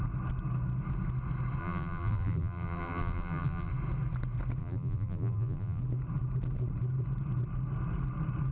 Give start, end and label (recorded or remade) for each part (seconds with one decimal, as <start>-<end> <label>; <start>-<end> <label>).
0.0-1.6 recorded; 1.6-3.7 remade; 3.7-4.6 recorded; 4.6-5.8 remade; 5.8-8.5 recorded

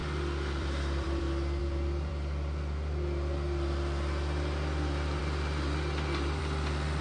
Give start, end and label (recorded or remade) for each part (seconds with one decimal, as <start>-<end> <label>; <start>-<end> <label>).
0.0-1.2 remade; 1.2-1.6 recorded; 1.6-2.1 remade; 2.1-7.0 recorded

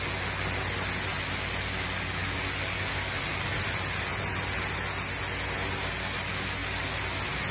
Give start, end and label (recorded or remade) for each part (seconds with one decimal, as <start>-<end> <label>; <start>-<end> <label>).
0.0-7.5 recorded

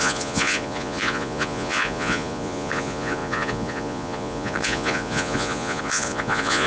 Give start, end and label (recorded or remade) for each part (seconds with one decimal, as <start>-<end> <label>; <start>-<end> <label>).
0.0-6.7 remade

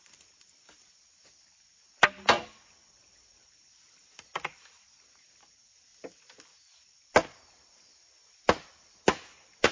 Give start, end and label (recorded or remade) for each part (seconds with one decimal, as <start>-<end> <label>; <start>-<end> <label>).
0.0-9.7 recorded

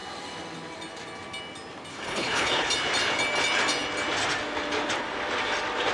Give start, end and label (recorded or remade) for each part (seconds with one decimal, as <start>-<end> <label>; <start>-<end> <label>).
0.0-1.9 recorded; 1.9-2.7 remade; 2.7-5.9 recorded